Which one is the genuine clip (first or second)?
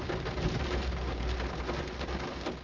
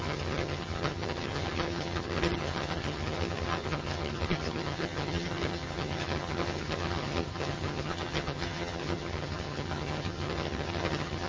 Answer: first